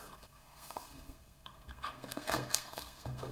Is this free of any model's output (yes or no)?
no